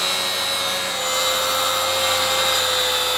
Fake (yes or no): no